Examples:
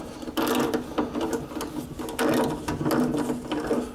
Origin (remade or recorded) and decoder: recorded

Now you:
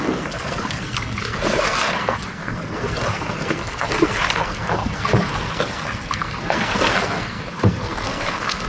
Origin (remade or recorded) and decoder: remade, codec, SNAC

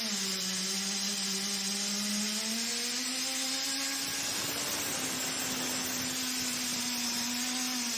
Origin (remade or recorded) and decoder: recorded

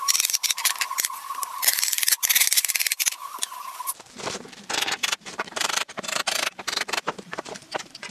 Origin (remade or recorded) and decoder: remade, vocoder, BigVGAN v2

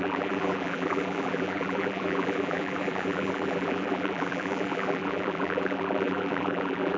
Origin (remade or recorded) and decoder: remade, vocoder, BigVGAN v2